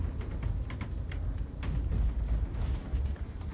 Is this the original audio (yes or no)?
yes